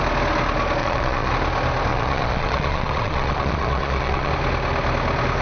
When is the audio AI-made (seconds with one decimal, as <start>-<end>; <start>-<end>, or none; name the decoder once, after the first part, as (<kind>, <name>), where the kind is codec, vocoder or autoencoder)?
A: 0.8-1.3 (vocoder, Vocos); 1.9-4.3